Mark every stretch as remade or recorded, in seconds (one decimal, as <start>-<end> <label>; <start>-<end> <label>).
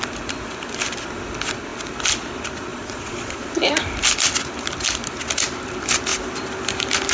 0.0-2.7 recorded; 2.7-3.5 remade; 3.5-7.1 recorded